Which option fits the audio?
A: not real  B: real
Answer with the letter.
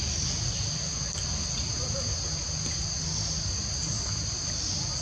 B